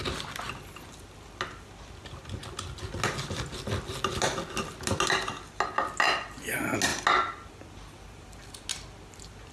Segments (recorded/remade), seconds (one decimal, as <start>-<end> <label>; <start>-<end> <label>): 0.0-9.5 recorded

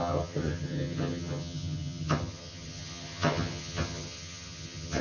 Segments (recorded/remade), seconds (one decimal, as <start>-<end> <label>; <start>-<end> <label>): 0.0-5.0 remade

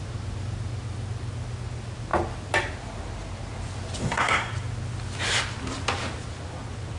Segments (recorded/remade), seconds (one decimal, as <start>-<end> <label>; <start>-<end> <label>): 0.0-4.0 recorded; 4.0-4.5 remade; 4.5-7.0 recorded

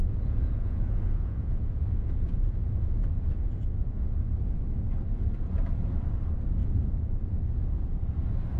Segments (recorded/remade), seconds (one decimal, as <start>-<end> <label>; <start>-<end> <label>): 0.0-4.2 remade; 4.2-6.6 recorded; 6.6-8.0 remade; 8.0-8.6 recorded

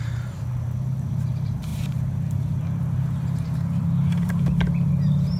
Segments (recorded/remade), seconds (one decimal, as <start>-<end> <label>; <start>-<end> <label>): 0.0-5.4 remade

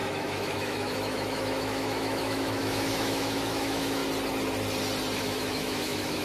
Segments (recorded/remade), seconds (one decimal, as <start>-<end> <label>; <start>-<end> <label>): 0.0-4.0 remade; 4.0-5.2 recorded; 5.2-6.2 remade